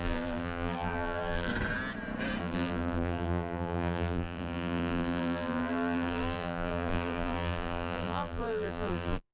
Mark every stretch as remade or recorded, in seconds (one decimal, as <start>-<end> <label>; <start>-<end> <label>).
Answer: 0.0-1.5 remade; 1.5-2.4 recorded; 2.4-9.3 remade